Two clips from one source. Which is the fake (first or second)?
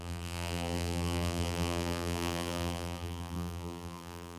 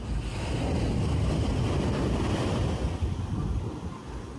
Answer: first